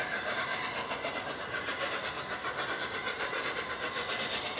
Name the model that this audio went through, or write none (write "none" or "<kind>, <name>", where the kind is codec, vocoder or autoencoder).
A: none